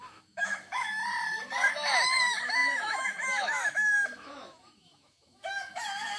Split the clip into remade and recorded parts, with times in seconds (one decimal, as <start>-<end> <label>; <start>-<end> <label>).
0.0-1.0 remade; 1.0-1.7 recorded; 1.7-6.2 remade